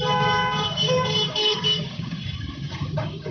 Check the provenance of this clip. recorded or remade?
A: remade